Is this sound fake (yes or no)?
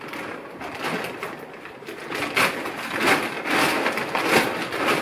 no